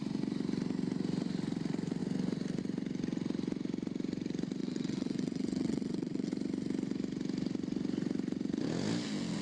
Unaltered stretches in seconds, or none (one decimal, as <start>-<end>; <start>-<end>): 0.0-4.6; 6.3-9.4